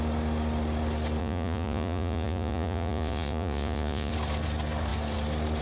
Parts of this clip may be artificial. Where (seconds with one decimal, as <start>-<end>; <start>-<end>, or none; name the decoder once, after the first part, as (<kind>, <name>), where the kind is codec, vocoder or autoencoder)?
1.2-4.1 (vocoder, Vocos)